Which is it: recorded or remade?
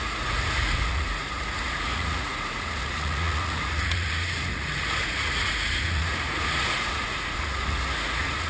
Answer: remade